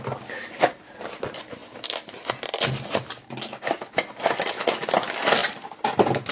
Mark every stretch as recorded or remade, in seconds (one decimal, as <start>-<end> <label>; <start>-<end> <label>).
0.0-6.3 recorded